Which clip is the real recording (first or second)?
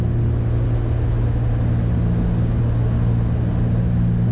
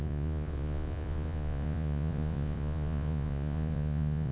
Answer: first